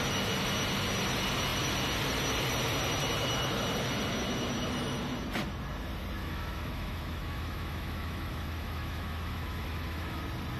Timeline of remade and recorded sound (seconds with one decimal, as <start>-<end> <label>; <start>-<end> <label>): 0.0-6.2 recorded; 6.2-10.2 remade; 10.2-10.6 recorded